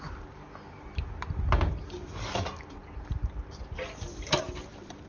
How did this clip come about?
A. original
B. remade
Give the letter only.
A